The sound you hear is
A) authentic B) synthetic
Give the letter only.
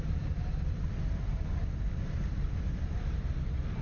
A